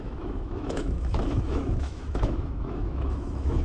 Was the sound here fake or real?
fake